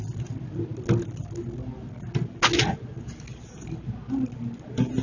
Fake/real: real